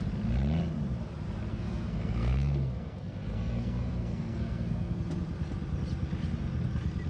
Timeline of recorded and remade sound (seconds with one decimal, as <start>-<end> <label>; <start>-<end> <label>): 0.0-1.5 recorded; 1.5-5.0 remade; 5.0-7.1 recorded